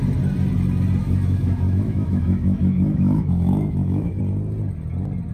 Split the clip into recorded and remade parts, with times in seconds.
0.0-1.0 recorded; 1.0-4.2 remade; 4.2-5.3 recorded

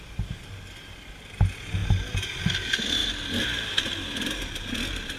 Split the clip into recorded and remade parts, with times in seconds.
0.0-5.2 recorded

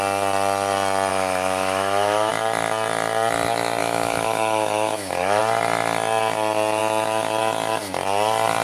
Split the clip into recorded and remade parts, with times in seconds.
0.0-1.1 recorded; 1.1-2.3 remade; 2.3-3.8 recorded; 3.8-5.4 remade; 5.4-8.6 recorded

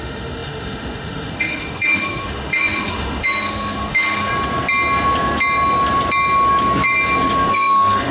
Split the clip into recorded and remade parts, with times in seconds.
0.0-4.3 remade; 4.3-7.5 recorded; 7.5-8.1 remade

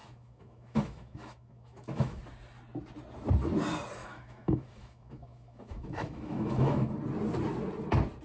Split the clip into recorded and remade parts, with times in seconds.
0.0-2.2 remade; 2.2-4.0 recorded; 4.0-6.9 remade; 6.9-8.2 recorded

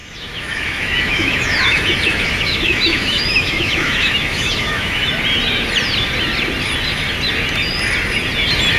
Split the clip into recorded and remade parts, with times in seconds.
0.0-5.1 remade; 5.1-8.8 recorded

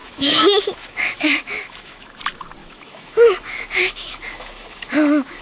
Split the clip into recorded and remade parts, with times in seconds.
0.0-2.2 remade; 2.2-2.6 recorded; 2.6-5.4 remade